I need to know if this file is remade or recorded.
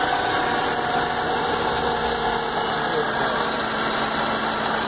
recorded